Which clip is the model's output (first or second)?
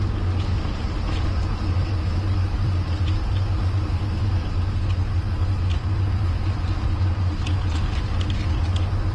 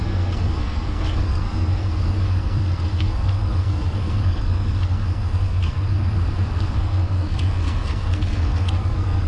second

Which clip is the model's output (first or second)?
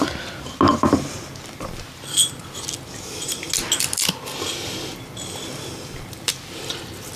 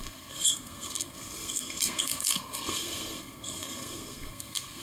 second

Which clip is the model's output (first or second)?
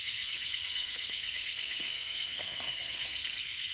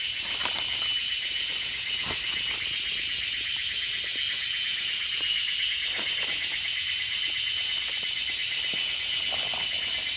first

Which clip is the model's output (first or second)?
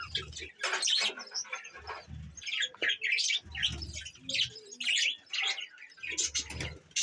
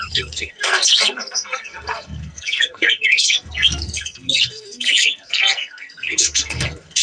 second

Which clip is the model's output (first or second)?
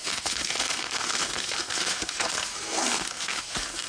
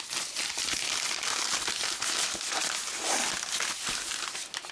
first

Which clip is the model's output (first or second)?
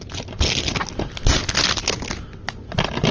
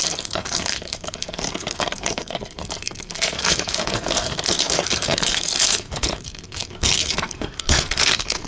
second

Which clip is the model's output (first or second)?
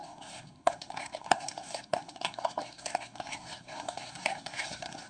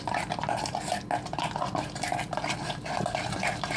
first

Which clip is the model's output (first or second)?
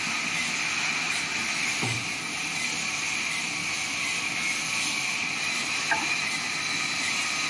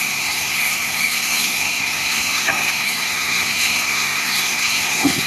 second